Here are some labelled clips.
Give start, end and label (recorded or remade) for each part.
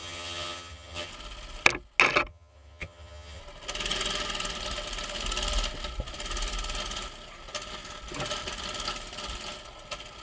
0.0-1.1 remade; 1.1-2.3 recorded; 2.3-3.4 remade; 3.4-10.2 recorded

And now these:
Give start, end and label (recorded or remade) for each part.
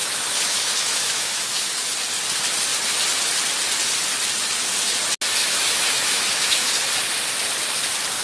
0.0-1.9 remade; 1.9-5.4 recorded; 5.4-6.8 remade; 6.8-8.2 recorded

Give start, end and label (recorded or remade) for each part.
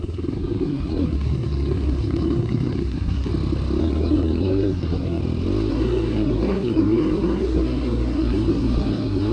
0.0-3.3 remade; 3.3-3.8 recorded; 3.8-5.2 remade; 5.2-5.7 recorded; 5.7-9.3 remade